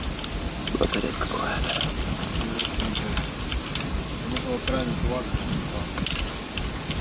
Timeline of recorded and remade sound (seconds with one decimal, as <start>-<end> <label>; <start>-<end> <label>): 0.0-7.0 recorded